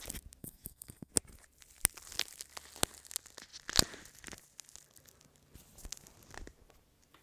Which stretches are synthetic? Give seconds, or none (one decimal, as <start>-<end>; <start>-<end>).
0.4-1.1